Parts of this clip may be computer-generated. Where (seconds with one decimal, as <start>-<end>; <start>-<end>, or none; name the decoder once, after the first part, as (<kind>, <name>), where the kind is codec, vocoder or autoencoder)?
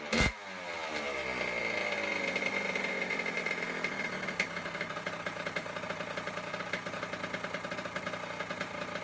2.1-7.0 (vocoder, BigVGAN v2)